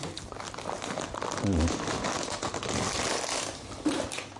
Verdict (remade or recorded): recorded